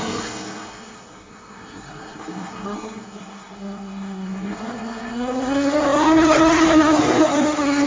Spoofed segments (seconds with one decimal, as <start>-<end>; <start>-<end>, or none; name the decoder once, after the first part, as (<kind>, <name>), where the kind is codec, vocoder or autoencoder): 0.0-7.9 (codec, SNAC)